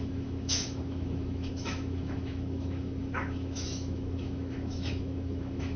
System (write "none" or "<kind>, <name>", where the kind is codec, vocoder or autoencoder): autoencoder, DAC-VAE